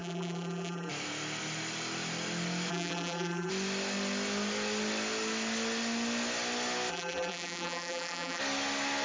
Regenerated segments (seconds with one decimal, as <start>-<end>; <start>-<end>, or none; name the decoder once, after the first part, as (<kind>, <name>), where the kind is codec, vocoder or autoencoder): 0.0-0.9 (vocoder, BigVGAN v2); 2.7-3.5; 6.9-8.4